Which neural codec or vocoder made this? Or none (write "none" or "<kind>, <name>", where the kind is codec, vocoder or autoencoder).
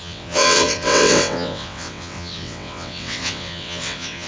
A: vocoder, WaveNeXt